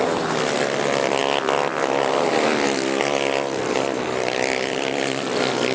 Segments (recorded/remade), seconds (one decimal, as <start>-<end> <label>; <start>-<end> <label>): 0.0-5.7 recorded